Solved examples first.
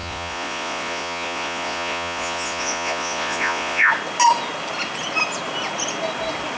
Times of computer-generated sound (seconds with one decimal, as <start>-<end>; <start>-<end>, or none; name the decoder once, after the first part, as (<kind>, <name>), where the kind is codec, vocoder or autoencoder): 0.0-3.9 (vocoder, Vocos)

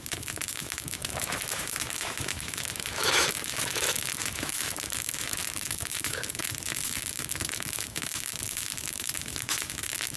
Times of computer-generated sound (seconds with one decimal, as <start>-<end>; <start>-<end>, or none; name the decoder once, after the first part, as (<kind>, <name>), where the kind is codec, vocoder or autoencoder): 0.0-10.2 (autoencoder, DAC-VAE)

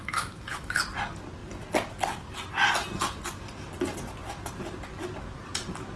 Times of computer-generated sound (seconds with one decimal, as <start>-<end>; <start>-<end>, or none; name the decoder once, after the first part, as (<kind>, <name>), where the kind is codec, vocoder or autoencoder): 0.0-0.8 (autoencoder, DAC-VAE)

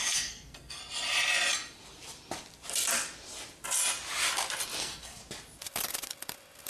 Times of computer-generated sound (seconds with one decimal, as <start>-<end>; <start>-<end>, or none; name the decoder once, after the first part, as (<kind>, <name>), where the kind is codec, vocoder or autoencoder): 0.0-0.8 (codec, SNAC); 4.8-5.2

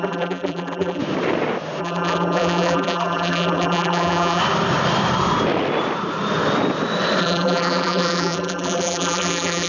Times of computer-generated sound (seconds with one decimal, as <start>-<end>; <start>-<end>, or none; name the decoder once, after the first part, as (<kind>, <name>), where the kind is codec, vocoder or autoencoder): 0.0-1.0 (vocoder, BigVGAN v2); 1.8-4.4; 7.2-9.7